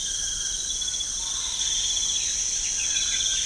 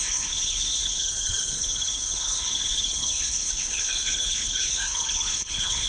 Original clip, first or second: first